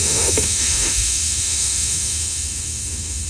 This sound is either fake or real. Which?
fake